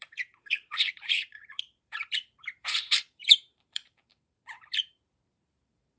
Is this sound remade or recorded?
remade